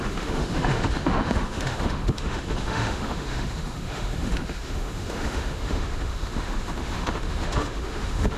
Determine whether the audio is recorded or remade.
remade